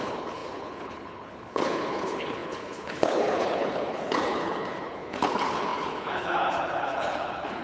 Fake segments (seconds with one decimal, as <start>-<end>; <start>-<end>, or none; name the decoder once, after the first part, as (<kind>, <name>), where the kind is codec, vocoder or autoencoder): 0.0-7.6 (codec, HILCodec)